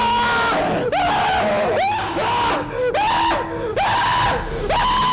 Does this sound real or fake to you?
real